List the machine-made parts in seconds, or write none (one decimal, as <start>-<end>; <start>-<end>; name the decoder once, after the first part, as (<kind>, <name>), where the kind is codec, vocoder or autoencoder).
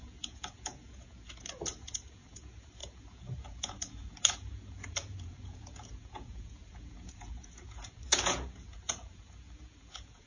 0.0-10.3 (vocoder, Vocos)